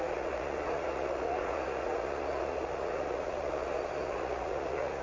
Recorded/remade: remade